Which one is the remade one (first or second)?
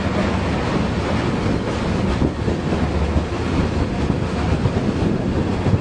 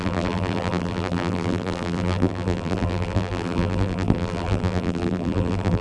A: second